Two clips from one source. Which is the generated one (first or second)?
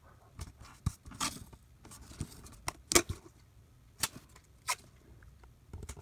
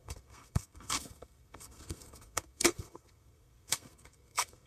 second